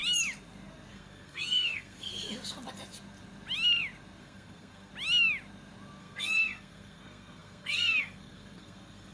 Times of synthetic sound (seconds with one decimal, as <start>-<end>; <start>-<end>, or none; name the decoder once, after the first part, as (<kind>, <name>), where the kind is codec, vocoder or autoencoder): 0.9-2.1 (codec, SNAC); 4.2-4.9; 6.0-9.1